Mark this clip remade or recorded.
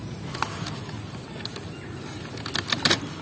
recorded